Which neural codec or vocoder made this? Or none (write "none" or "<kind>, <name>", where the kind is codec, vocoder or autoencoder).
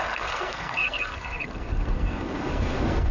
codec, SNAC